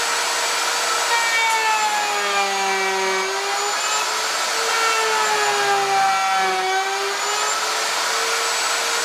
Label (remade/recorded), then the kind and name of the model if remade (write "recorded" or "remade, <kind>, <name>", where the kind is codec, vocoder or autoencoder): recorded